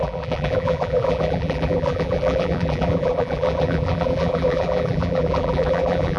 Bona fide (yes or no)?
no